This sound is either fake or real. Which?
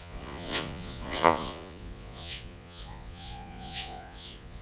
fake